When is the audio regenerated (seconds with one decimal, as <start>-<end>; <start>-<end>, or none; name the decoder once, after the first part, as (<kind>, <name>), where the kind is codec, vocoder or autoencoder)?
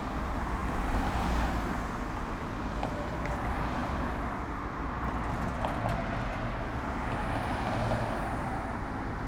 none